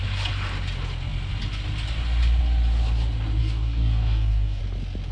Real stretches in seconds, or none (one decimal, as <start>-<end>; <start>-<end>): 0.0-3.4; 4.6-5.1